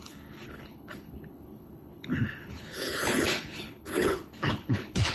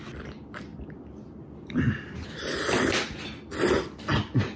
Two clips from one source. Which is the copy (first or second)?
first